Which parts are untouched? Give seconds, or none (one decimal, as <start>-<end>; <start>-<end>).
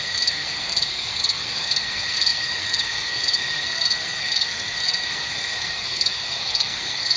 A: none